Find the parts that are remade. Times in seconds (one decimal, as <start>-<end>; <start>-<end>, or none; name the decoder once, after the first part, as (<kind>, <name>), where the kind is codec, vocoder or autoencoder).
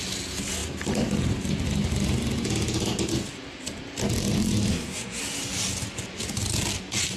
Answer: 4.7-5.2 (codec, SNAC)